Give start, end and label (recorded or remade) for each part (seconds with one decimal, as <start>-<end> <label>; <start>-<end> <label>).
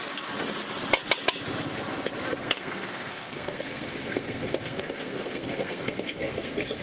0.0-2.4 recorded; 2.4-6.8 remade